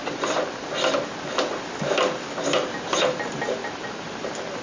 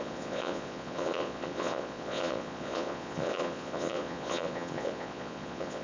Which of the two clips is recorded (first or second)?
first